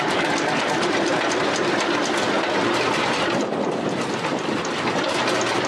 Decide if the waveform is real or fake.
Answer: real